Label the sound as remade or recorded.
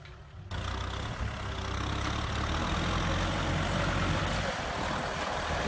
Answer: recorded